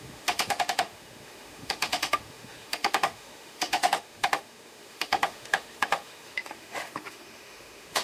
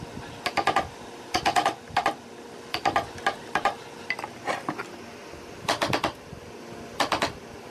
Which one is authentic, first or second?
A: second